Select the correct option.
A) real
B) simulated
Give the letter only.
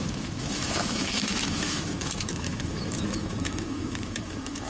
B